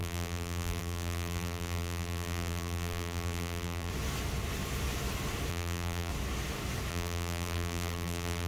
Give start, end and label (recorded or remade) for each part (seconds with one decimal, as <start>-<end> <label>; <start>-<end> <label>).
0.0-3.9 remade; 3.9-5.5 recorded; 5.5-6.1 remade; 6.1-6.9 recorded; 6.9-8.5 remade